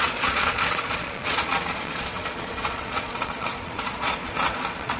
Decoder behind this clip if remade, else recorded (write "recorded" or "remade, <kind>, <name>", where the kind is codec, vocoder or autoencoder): remade, vocoder, Vocos